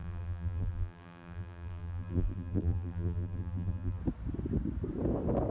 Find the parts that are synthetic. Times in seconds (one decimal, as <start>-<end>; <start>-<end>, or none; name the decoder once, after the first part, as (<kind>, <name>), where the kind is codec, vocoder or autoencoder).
0.0-4.0 (vocoder, BigVGAN v2)